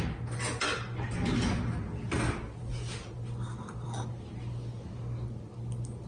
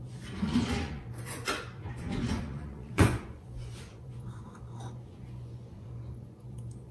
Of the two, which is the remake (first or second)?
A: second